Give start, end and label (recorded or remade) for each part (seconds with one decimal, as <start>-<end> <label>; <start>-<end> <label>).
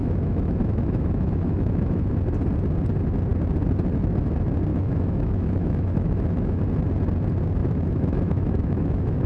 0.0-2.1 remade; 2.1-4.7 recorded; 4.7-6.6 remade; 6.6-7.6 recorded; 7.6-9.3 remade